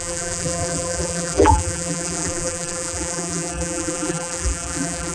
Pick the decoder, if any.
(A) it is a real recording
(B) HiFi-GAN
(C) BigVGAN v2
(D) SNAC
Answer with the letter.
C